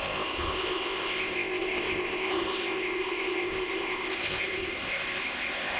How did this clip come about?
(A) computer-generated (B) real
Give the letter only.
A